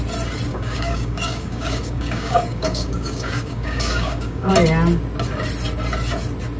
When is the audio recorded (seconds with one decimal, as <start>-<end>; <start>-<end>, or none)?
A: 0.0-0.5; 4.5-6.6